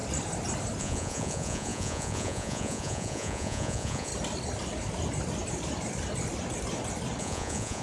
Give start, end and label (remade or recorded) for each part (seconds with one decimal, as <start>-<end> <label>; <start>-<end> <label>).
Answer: 0.0-0.8 recorded; 0.8-4.1 remade; 4.1-7.2 recorded; 7.2-7.8 remade